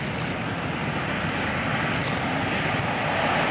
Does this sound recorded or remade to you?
recorded